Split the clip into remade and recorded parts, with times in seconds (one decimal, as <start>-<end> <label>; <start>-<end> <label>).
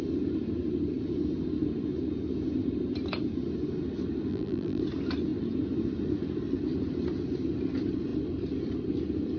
0.0-4.3 recorded; 4.3-4.8 remade; 4.8-9.4 recorded